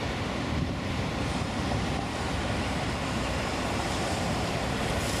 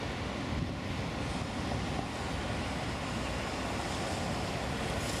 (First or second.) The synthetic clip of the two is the first